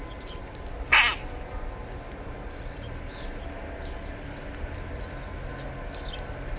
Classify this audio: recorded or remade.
recorded